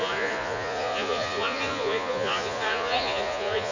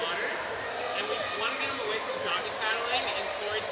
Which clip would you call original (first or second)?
second